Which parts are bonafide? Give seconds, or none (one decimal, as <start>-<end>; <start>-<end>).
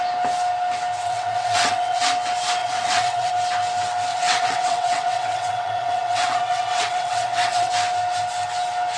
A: 0.0-1.0; 2.1-2.6; 3.3-4.1; 7.7-9.0